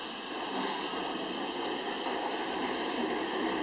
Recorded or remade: recorded